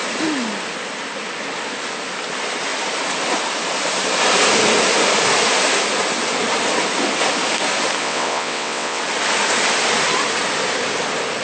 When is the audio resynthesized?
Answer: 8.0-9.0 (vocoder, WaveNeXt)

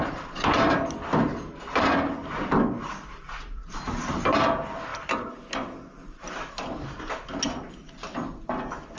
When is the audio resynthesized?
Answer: none

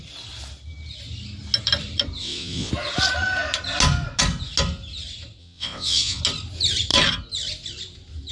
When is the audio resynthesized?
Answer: 2.2-2.7 (vocoder, WaveNeXt); 5.4-6.2

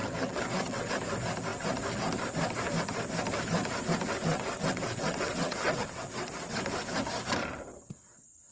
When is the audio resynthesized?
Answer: 0.0-0.9 (vocoder, WaveNeXt); 4.3-6.5

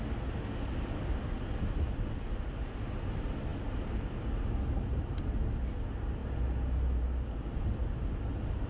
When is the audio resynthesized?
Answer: none

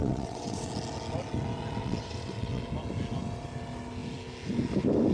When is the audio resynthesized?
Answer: 0.0-0.7 (vocoder, WaveNeXt); 1.8-2.6

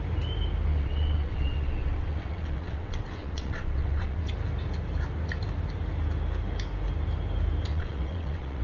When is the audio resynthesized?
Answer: 0.7-4.3 (vocoder, WaveNeXt); 7.7-8.6

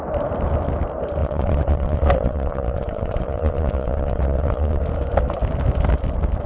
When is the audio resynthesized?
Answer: 1.2-4.8 (vocoder, WaveNeXt)